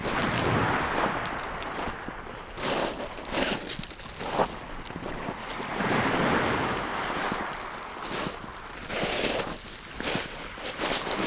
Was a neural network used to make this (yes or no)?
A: no